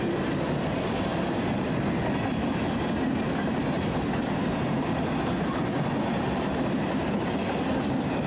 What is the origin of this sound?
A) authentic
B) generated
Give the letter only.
A